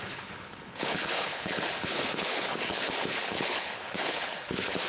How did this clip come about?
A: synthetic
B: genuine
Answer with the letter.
A